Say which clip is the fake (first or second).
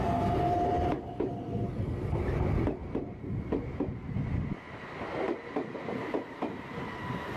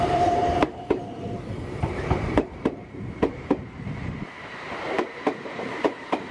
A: second